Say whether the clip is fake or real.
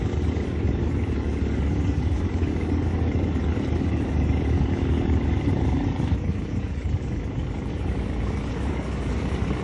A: fake